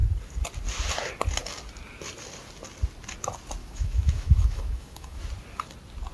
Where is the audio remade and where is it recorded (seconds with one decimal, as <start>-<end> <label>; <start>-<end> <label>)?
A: 0.0-3.6 recorded; 3.6-5.2 remade; 5.2-6.1 recorded